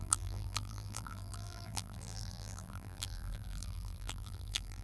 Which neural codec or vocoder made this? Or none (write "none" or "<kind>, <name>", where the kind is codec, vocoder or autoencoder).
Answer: vocoder, BigVGAN v2